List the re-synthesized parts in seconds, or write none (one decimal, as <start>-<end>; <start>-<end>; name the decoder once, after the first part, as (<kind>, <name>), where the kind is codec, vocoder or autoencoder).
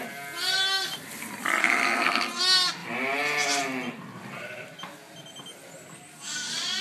1.6-2.4 (codec, SNAC)